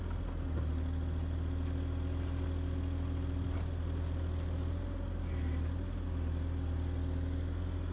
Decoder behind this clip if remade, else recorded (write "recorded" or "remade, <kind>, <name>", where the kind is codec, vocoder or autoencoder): recorded